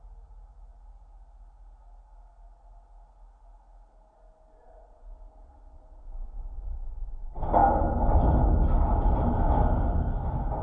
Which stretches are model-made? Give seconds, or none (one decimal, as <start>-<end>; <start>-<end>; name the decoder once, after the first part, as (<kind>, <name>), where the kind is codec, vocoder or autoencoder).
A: none